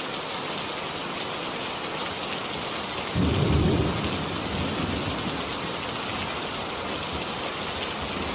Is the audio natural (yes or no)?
yes